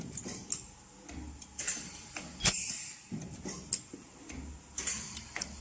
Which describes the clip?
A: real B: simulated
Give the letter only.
A